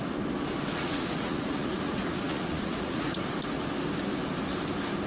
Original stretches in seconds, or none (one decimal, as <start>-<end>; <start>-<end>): 0.0-0.7; 3.2-5.1